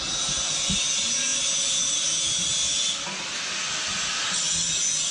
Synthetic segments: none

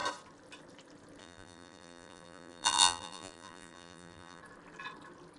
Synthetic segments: 1.2-4.4 (vocoder, BigVGAN v2)

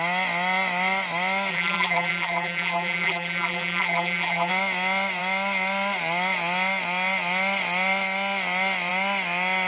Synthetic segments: 1.5-4.5 (vocoder, BigVGAN v2)

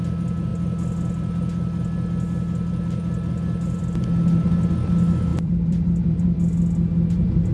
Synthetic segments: 5.3-6.4 (vocoder, BigVGAN v2)

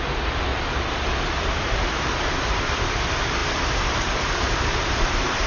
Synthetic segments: 0.0-0.5 (vocoder, BigVGAN v2); 1.4-5.5

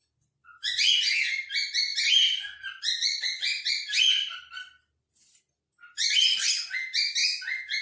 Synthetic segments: 0.4-0.9 (vocoder, BigVGAN v2); 1.9-6.5